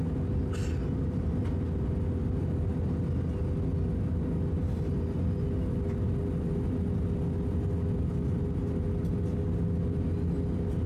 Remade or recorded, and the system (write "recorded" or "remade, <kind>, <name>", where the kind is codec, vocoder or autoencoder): recorded